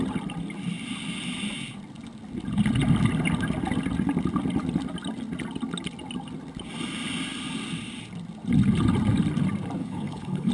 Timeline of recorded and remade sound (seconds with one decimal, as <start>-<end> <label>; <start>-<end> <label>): 0.0-9.8 recorded; 9.8-10.5 remade